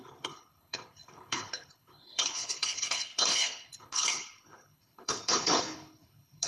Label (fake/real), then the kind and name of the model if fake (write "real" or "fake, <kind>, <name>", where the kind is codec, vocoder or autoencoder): fake, codec, HILCodec